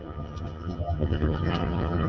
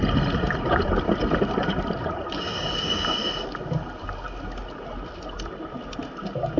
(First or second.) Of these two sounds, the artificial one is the first